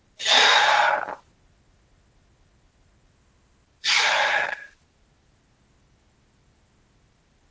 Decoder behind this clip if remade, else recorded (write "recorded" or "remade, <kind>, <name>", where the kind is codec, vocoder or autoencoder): recorded